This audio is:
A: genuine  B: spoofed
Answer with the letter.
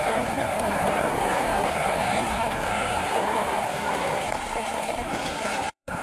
B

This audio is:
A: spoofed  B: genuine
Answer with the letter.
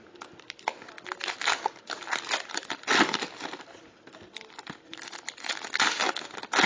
B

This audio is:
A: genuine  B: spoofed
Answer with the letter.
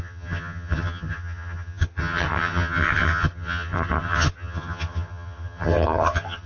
B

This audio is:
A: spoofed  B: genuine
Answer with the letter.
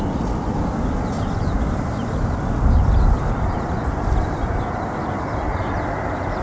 B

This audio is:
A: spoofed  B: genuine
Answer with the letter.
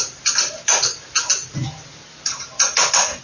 B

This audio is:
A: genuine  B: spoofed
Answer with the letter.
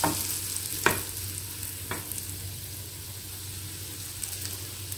A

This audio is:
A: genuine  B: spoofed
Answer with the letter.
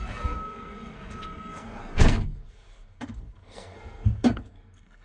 B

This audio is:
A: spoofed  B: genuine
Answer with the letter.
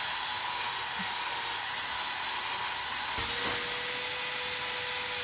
B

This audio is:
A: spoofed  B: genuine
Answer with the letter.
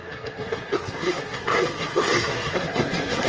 A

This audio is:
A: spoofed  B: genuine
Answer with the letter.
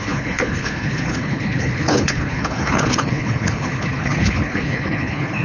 A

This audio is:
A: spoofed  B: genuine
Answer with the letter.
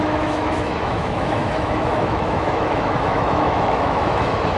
A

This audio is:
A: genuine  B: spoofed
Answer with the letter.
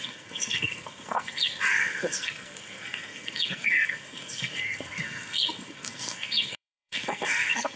B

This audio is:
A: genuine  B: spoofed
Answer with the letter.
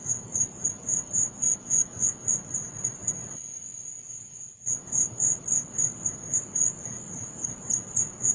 A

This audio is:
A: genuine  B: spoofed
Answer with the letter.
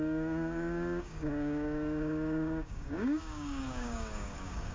B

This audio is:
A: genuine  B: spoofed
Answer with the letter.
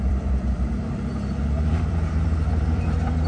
B